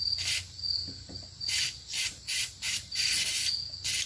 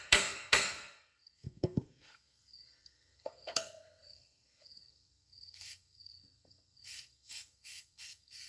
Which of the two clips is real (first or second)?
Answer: first